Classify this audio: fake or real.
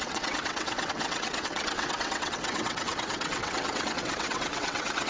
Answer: fake